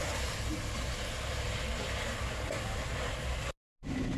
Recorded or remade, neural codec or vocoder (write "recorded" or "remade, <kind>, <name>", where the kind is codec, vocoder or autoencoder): recorded